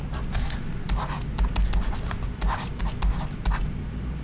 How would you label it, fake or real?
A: real